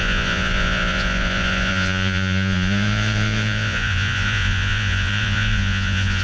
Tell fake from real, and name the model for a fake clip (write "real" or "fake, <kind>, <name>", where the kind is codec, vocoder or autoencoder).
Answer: fake, vocoder, Vocos